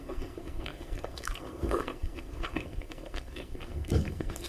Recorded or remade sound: remade